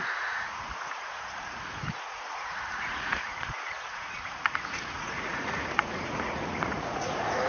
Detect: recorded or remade remade